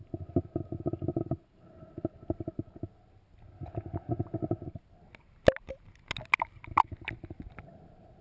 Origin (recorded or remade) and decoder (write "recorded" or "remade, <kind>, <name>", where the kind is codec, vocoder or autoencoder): recorded